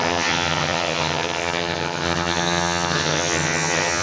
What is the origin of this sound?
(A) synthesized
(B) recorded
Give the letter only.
A